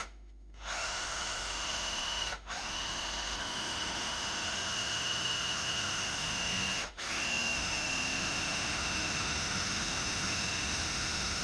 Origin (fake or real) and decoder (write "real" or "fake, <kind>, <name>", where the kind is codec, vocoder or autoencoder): fake, autoencoder, DAC-VAE